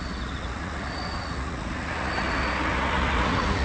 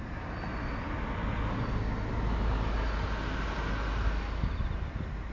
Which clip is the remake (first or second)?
first